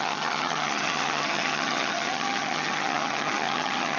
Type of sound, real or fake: fake